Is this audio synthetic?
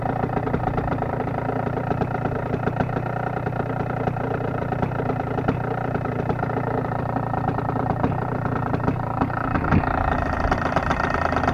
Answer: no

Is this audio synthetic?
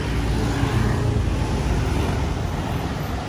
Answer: no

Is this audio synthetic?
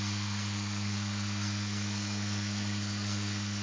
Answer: yes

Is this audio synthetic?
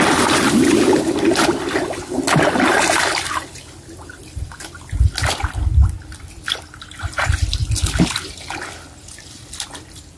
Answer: no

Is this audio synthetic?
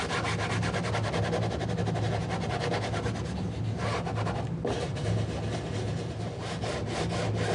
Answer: no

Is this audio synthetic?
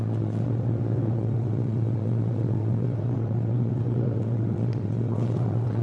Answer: yes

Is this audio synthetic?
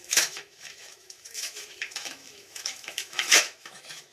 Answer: yes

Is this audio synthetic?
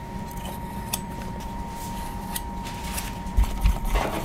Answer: yes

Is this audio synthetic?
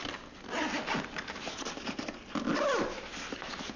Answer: no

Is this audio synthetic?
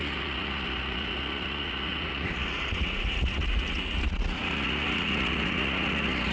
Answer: yes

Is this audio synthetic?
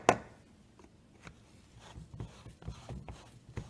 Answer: no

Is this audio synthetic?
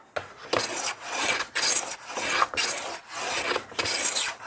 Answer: no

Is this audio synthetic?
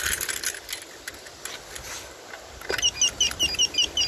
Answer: no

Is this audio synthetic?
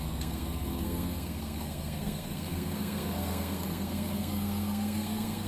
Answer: yes